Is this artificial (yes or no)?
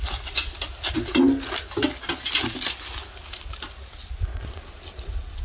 no